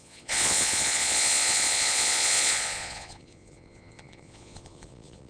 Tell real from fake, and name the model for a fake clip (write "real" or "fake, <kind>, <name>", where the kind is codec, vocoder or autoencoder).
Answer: fake, vocoder, Vocos